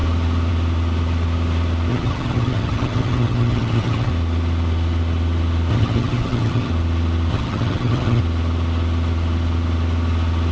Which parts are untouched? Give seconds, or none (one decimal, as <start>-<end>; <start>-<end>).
0.0-1.9; 4.1-5.7; 6.7-7.3; 8.2-10.5